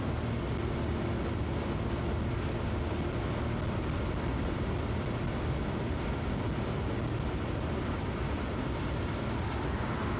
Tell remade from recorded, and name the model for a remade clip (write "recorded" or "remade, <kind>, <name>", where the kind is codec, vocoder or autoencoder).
recorded